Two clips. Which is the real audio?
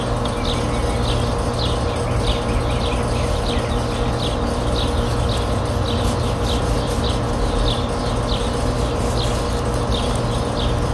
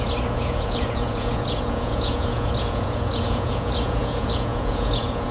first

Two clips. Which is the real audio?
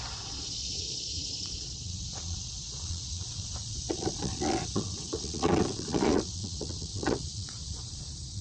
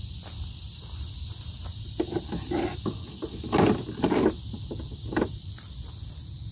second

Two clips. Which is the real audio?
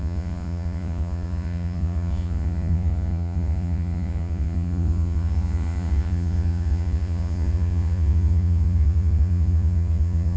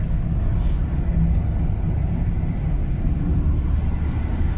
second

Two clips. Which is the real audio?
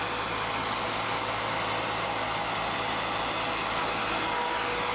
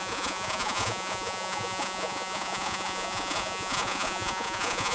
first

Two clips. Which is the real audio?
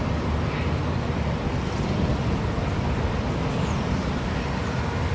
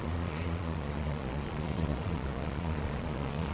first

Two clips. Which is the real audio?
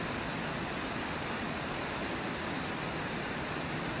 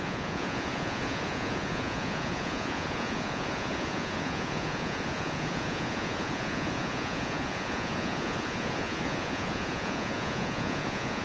first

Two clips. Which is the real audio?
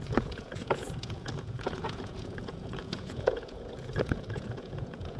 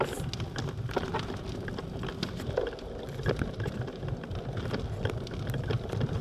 second